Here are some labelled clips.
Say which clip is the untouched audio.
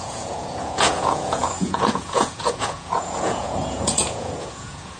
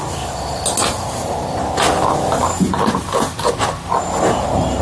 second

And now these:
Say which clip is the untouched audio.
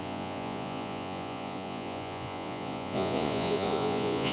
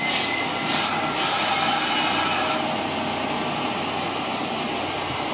second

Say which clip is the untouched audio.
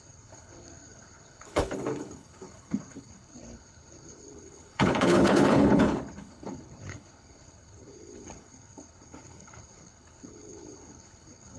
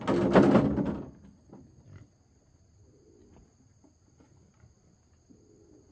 second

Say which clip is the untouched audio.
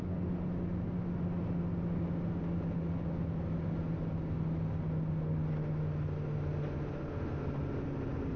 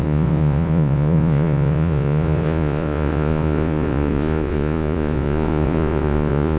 first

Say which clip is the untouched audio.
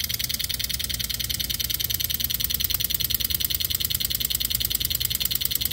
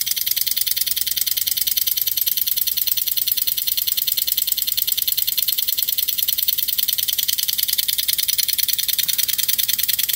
first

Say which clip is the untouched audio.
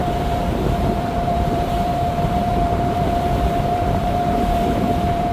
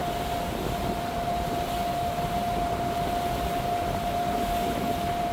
second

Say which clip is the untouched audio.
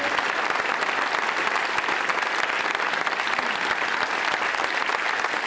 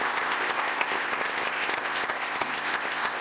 first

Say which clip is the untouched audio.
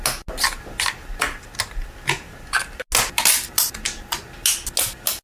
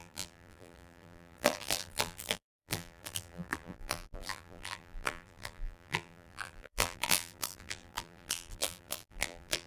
first